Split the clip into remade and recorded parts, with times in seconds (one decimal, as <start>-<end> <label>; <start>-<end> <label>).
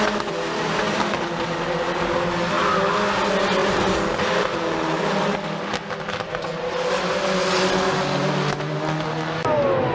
0.0-3.6 recorded; 3.6-5.0 remade; 5.0-9.9 recorded